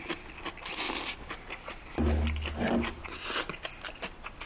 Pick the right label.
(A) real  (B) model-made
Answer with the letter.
A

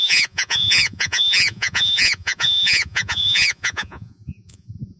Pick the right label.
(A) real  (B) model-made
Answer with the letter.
B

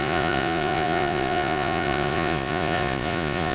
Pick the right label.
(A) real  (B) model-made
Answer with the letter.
B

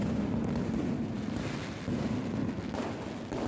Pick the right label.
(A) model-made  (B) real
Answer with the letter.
B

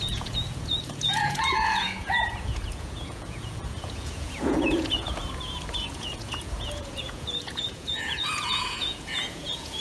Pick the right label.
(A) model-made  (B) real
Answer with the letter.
A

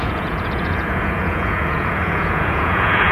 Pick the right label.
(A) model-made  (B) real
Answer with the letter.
A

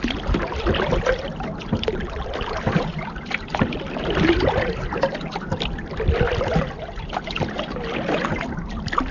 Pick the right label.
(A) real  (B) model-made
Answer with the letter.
A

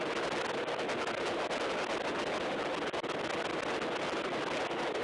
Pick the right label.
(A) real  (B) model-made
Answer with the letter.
A